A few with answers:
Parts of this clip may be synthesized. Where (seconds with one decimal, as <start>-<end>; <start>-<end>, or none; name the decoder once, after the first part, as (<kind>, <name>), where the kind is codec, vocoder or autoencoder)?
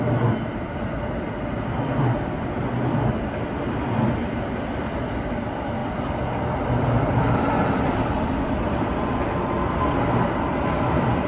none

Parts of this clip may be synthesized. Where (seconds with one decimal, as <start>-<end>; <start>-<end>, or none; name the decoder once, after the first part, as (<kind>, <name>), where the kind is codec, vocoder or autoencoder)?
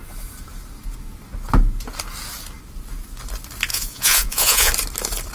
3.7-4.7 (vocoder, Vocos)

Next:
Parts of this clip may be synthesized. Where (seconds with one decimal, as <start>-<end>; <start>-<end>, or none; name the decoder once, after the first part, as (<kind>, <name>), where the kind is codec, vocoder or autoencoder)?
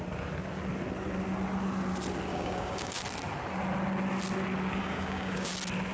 2.3-3.0 (codec, DAC); 4.8-5.5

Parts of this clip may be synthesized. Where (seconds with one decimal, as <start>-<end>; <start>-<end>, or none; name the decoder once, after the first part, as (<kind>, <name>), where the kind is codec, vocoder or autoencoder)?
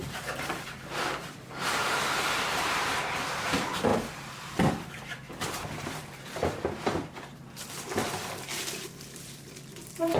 0.0-10.2 (vocoder, BigVGAN v2)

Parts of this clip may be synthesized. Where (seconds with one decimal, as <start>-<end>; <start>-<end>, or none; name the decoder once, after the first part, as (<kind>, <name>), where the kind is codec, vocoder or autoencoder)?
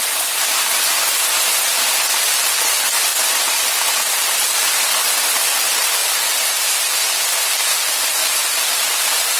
6.0-6.7 (vocoder, BigVGAN v2); 8.2-9.0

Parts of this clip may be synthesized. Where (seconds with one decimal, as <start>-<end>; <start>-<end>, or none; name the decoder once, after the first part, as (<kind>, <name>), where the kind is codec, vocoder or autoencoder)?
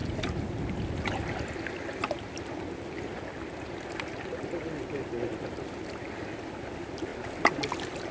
none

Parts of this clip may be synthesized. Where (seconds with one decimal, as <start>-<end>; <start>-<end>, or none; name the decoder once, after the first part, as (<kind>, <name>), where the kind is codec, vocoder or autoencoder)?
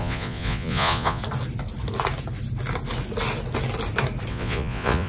0.0-1.2 (vocoder, Vocos); 4.3-5.1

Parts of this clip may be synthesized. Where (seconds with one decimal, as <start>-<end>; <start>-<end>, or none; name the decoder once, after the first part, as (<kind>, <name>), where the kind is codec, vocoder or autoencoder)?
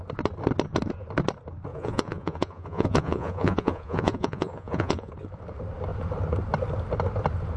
1.7-5.1 (vocoder, Vocos)